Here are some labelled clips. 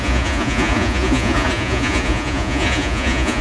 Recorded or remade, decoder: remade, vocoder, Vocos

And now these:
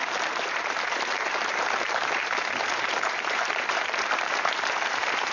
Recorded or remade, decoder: remade, vocoder, BigVGAN v2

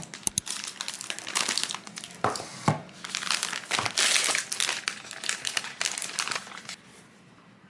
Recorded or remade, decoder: recorded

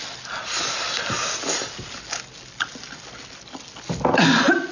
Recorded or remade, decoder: recorded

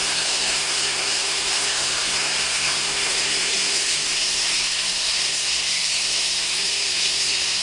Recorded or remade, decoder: remade, codec, SNAC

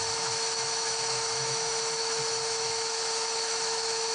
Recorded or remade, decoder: remade, autoencoder, DAC-VAE